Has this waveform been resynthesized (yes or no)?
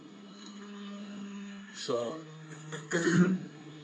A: yes